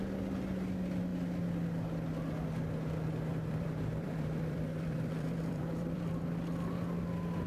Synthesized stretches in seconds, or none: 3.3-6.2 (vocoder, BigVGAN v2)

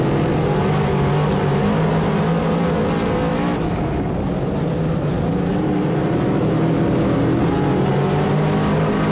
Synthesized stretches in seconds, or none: none

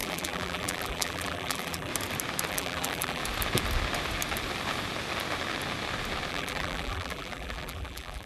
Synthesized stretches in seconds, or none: 0.0-1.9 (vocoder, BigVGAN v2); 2.5-3.2; 6.3-8.3

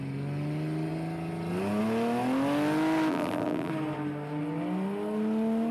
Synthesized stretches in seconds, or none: 3.1-3.7 (vocoder, BigVGAN v2)

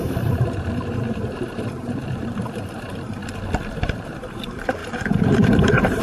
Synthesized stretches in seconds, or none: 0.0-3.2 (vocoder, BigVGAN v2); 3.8-6.0

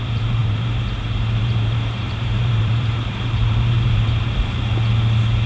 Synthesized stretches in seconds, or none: 0.0-4.7 (vocoder, BigVGAN v2)